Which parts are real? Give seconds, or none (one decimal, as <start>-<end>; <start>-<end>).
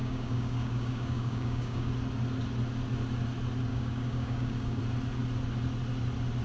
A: 1.9-3.7; 4.8-6.4